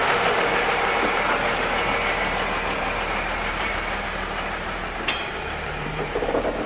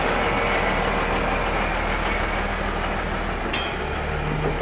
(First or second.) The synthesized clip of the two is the first